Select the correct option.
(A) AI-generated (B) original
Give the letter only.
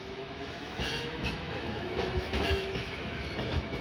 A